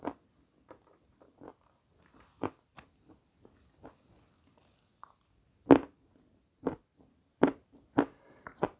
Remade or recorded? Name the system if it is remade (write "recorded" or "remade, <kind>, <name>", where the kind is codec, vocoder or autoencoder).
recorded